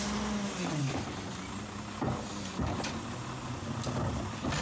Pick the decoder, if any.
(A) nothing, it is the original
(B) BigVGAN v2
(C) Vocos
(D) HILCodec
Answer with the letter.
A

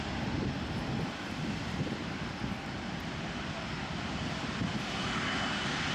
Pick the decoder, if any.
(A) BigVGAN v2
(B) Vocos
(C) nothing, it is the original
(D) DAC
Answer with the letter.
C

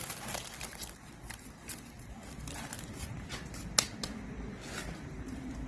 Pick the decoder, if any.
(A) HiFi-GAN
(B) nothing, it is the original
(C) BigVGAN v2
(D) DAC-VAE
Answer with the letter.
B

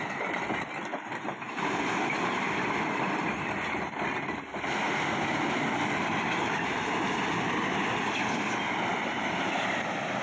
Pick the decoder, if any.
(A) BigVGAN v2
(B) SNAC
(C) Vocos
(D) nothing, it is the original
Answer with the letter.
D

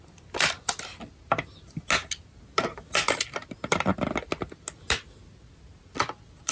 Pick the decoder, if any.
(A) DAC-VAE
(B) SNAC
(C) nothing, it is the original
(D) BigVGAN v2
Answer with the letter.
C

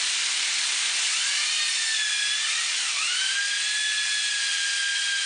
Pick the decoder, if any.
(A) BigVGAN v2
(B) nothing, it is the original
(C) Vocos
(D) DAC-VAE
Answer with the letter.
B